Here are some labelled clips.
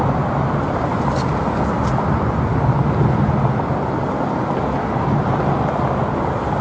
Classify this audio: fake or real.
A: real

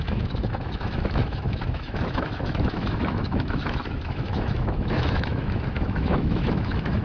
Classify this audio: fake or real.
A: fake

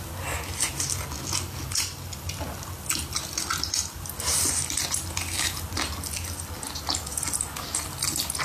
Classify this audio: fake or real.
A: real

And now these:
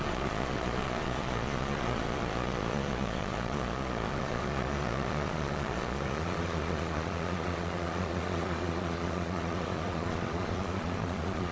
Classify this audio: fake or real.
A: fake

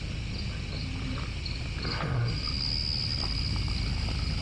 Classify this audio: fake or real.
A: real